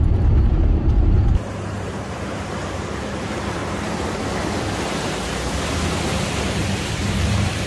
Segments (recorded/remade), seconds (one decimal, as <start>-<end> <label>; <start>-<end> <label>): 0.0-3.6 remade; 3.6-6.1 recorded; 6.1-7.7 remade